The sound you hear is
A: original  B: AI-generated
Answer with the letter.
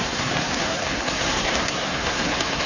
B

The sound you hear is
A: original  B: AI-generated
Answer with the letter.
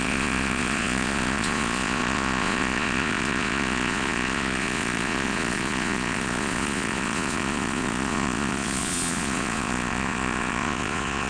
B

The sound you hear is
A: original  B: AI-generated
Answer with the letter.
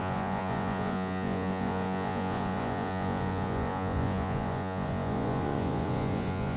B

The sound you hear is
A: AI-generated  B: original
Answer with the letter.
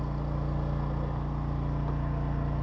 B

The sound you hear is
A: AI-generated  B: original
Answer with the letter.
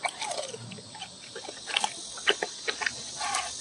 B